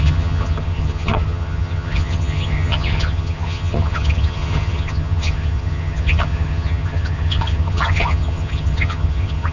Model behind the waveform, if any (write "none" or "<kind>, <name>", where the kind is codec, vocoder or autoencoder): vocoder, HiFi-GAN